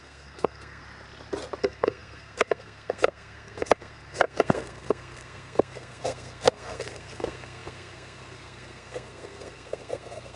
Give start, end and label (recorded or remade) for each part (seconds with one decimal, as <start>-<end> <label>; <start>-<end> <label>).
0.0-0.8 remade; 0.8-1.6 recorded; 1.6-10.4 remade